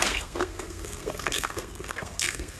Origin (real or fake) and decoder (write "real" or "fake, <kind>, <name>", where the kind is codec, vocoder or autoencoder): fake, codec, SNAC